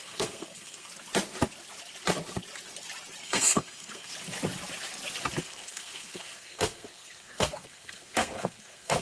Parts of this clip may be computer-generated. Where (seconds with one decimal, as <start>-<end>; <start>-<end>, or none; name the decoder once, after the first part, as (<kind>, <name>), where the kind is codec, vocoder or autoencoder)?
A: 0.0-0.9 (codec, SNAC); 3.2-4.1; 5.4-9.0